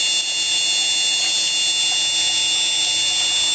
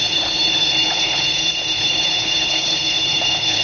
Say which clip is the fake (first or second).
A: second